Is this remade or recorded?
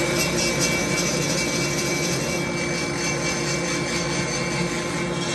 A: recorded